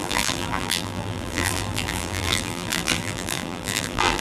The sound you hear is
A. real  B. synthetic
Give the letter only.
B